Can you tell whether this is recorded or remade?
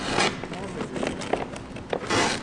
recorded